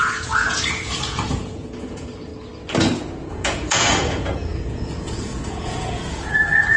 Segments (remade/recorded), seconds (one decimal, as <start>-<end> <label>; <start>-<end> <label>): 0.0-2.3 remade; 2.3-3.3 recorded; 3.3-6.8 remade